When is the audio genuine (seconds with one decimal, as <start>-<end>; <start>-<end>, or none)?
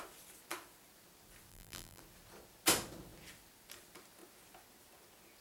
0.0-1.5; 2.0-5.4